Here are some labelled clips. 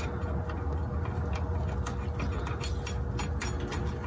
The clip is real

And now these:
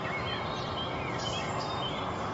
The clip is real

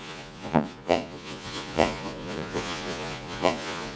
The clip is fake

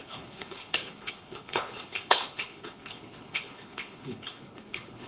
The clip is fake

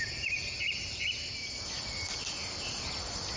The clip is real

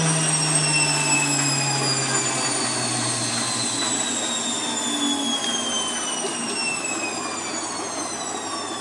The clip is real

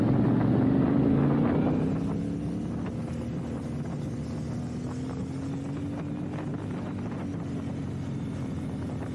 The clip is real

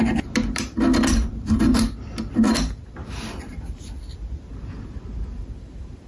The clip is real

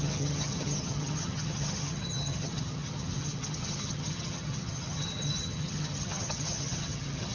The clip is fake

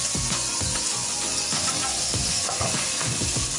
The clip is fake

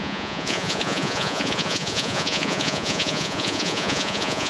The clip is fake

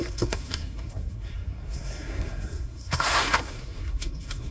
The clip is fake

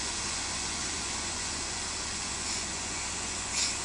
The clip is fake